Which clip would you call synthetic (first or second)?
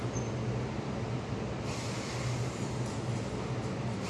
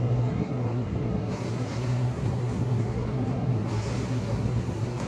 second